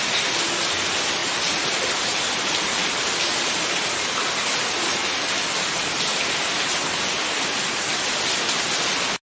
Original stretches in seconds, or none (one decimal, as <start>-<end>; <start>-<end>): 0.0-1.2; 3.1-9.3